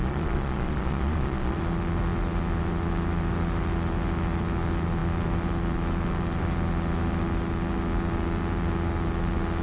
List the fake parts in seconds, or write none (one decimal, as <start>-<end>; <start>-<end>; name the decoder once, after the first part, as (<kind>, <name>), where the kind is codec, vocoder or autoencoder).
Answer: 0.0-1.6 (vocoder, Vocos)